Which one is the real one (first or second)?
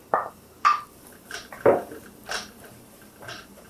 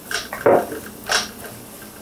second